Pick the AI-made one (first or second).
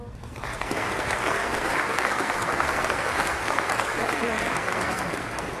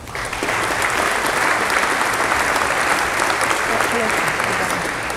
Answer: first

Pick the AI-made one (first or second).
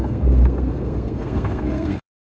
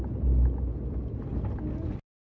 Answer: first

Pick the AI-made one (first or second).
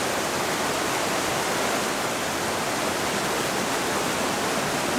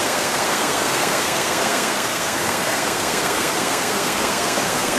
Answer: second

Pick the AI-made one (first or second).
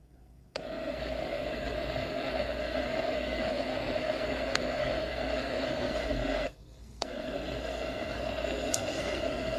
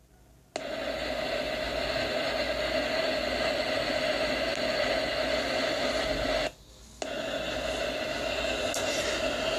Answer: first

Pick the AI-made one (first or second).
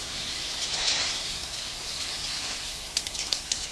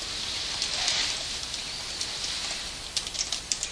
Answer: first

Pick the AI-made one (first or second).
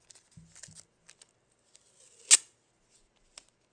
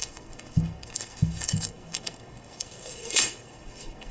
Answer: second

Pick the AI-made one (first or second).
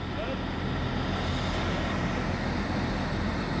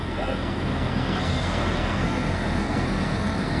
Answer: second